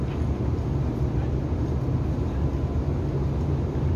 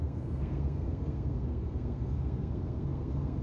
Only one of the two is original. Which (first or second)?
first